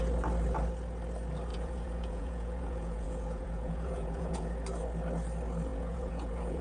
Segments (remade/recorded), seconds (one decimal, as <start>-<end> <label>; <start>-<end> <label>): 0.0-1.5 recorded; 1.5-4.5 remade; 4.5-5.7 recorded; 5.7-6.6 remade

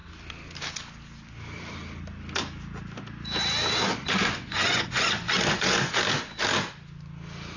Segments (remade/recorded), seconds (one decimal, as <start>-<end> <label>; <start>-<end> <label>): 0.0-4.0 recorded; 4.0-6.0 remade; 6.0-7.6 recorded

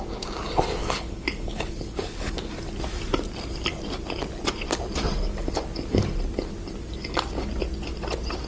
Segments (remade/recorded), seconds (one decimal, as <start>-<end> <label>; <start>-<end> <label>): 0.0-0.8 recorded; 0.8-2.3 remade; 2.3-8.5 recorded